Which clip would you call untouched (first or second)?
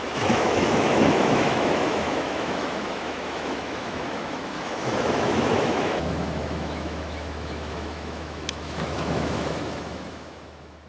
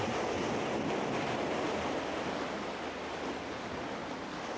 second